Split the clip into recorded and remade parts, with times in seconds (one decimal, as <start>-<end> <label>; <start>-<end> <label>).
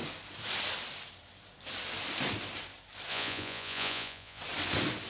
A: 0.0-3.1 recorded; 3.1-4.4 remade; 4.4-5.1 recorded